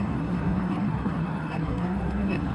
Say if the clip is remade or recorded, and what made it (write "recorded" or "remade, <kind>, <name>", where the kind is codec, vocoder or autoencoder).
remade, codec, SNAC